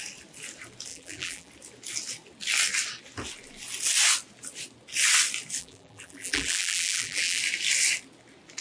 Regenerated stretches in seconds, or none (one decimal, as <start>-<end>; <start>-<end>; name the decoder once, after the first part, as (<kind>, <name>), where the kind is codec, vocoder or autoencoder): 0.9-1.5 (vocoder, BigVGAN v2); 5.6-7.4